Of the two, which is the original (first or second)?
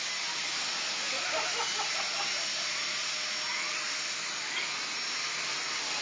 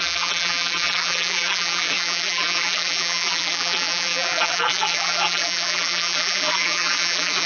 first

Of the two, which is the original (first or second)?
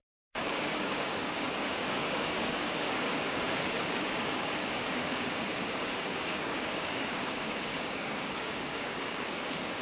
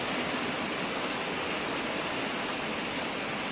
second